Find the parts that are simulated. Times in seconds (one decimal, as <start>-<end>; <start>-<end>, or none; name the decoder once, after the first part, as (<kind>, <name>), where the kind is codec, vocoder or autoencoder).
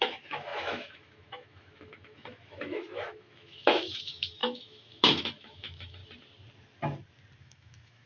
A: 0.0-6.0 (autoencoder, DAC-VAE); 7.4-8.1